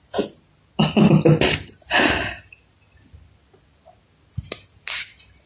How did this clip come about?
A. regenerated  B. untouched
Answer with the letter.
B